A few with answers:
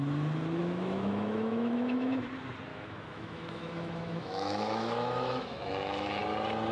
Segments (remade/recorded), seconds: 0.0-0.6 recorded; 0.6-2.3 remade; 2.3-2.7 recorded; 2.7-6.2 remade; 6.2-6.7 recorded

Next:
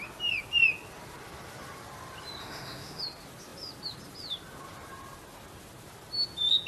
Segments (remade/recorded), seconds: 0.0-2.4 recorded; 2.4-3.0 remade; 3.0-6.7 recorded

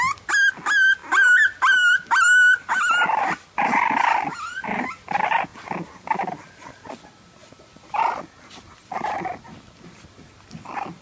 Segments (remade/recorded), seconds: 0.0-11.0 recorded

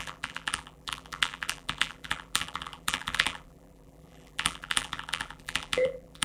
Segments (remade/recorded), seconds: 0.0-6.2 remade

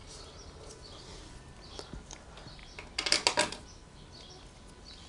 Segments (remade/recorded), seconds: 0.0-5.1 recorded

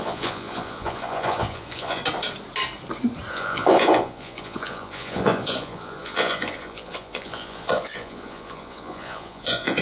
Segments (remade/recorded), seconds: 0.0-2.0 remade; 2.0-3.3 recorded; 3.3-9.8 remade